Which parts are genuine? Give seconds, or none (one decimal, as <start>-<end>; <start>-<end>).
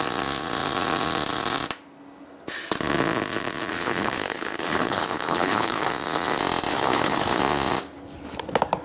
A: 0.0-3.7; 5.9-6.7; 7.4-8.8